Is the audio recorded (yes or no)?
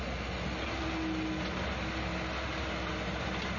yes